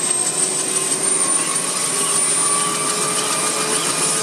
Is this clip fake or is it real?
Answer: real